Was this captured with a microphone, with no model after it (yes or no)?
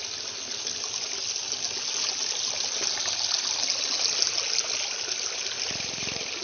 yes